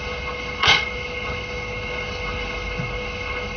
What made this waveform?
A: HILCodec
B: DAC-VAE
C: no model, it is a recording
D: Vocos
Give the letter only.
A